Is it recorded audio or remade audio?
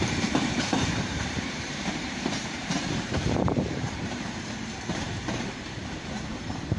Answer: remade